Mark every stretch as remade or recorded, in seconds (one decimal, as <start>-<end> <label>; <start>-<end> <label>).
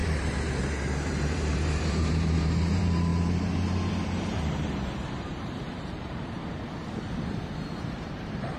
0.0-3.1 remade; 3.1-3.9 recorded; 3.9-6.4 remade; 6.4-7.8 recorded; 7.8-8.6 remade